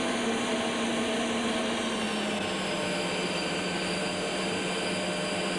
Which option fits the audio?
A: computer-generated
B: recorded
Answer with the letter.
B